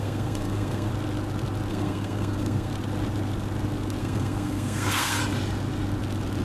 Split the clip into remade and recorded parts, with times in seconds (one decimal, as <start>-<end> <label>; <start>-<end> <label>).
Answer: 0.0-0.9 remade; 0.9-1.7 recorded; 1.7-2.7 remade; 2.7-4.0 recorded; 4.0-5.2 remade; 5.2-6.4 recorded